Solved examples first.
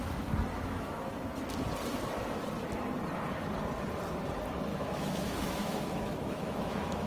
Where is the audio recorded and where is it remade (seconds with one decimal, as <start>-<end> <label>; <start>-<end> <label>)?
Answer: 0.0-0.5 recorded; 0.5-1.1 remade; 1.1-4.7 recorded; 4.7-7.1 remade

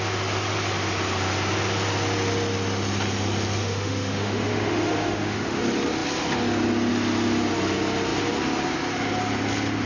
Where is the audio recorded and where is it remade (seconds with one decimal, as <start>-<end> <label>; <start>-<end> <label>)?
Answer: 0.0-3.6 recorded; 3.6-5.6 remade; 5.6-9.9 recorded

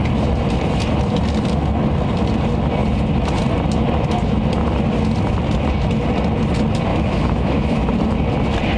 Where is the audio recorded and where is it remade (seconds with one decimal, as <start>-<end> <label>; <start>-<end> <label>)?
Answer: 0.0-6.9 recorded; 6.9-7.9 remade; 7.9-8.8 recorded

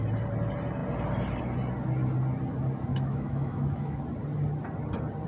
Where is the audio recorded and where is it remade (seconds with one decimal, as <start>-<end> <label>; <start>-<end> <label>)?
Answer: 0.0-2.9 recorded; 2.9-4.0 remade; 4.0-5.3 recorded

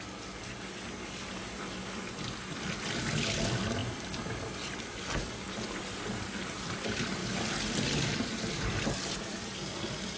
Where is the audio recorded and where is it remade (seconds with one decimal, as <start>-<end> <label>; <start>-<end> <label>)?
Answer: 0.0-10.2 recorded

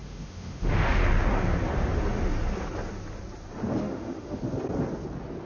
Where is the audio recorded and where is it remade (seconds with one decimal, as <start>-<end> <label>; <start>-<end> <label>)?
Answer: 0.0-1.0 remade; 1.0-3.8 recorded; 3.8-4.4 remade; 4.4-5.5 recorded

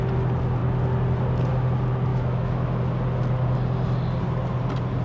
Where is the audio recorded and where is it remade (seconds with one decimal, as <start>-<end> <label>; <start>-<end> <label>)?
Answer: 0.0-2.1 recorded; 2.1-2.8 remade; 2.8-5.0 recorded